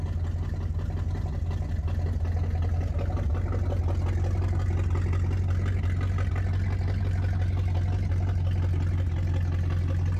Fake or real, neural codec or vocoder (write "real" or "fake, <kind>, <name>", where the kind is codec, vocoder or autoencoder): real